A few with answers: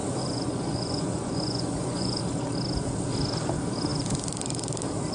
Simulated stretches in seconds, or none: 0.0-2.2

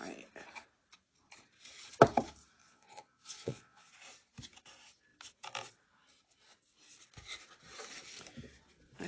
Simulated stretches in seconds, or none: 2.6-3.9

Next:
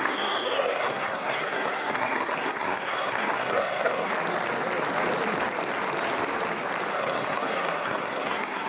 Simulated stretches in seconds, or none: 0.0-4.1; 6.9-8.7